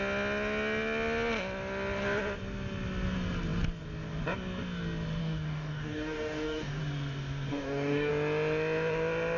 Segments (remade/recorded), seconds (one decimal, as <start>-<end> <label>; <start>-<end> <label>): 0.0-5.2 recorded; 5.2-6.8 remade; 6.8-7.5 recorded; 7.5-8.1 remade; 8.1-9.4 recorded